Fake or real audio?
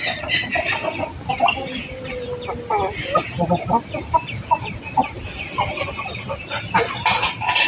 real